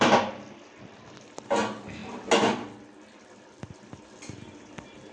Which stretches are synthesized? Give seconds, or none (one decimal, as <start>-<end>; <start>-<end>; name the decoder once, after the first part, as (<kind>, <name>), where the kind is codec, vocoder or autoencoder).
none